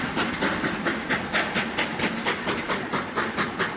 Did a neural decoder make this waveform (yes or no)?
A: no